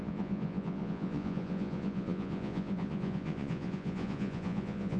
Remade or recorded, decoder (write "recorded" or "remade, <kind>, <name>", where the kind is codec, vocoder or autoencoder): remade, vocoder, Vocos